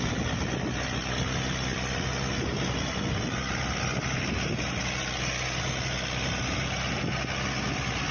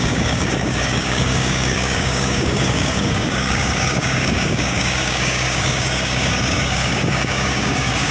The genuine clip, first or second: first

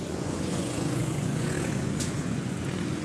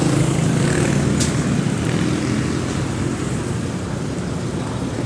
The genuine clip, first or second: second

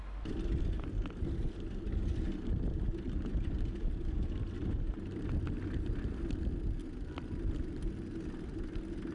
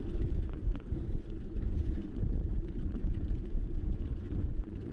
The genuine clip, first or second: first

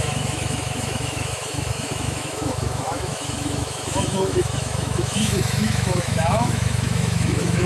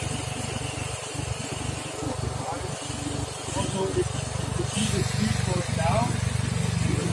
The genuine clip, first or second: second